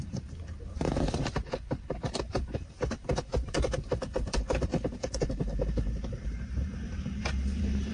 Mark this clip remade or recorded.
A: remade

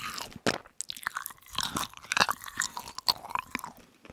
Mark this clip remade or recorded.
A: recorded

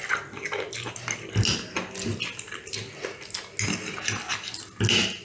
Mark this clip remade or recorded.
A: recorded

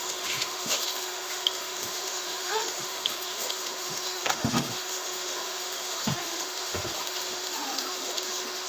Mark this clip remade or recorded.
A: remade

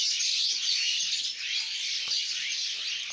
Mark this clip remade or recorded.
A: recorded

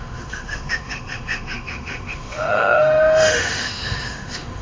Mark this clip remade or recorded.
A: remade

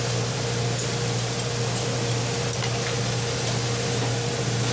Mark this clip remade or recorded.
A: recorded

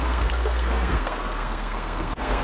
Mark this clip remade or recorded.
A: remade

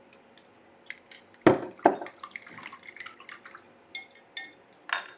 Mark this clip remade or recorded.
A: recorded